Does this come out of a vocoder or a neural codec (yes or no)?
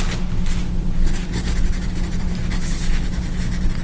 no